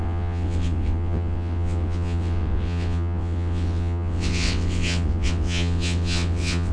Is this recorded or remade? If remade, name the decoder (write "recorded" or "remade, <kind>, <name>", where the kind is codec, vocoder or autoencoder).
remade, vocoder, WaveNeXt